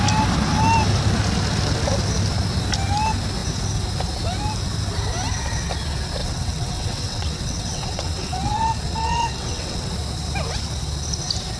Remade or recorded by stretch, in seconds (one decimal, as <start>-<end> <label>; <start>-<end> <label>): 0.0-6.2 recorded; 6.2-9.9 remade; 9.9-11.6 recorded